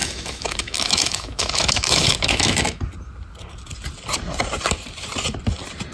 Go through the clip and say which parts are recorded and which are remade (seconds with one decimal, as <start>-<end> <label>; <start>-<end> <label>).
0.0-2.8 remade; 2.8-5.9 recorded